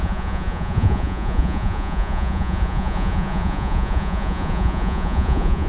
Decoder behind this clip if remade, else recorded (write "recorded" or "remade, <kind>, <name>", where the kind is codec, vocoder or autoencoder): remade, vocoder, Vocos